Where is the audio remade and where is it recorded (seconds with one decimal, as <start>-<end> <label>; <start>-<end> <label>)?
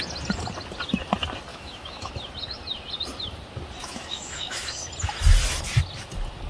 0.0-1.5 recorded; 1.5-2.1 remade; 2.1-3.8 recorded; 3.8-4.9 remade; 4.9-6.5 recorded